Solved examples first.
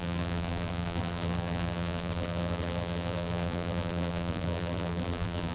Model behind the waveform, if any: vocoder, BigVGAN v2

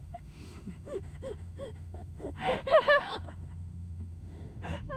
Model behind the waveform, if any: autoencoder, DAC-VAE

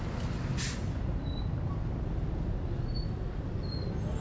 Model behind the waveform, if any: none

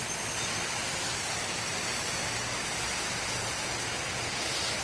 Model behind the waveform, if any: none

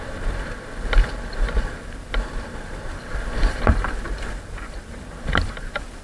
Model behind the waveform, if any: vocoder, BigVGAN v2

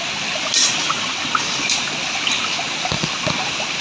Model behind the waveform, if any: none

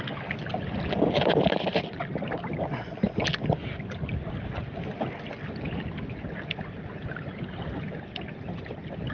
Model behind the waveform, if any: none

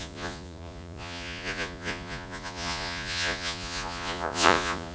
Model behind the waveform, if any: vocoder, Vocos